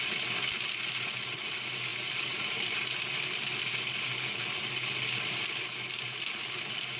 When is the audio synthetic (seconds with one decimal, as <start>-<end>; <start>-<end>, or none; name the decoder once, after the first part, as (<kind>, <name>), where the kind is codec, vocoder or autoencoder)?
none